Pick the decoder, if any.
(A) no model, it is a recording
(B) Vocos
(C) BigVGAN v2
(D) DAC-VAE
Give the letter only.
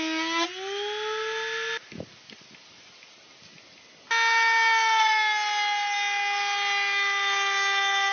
A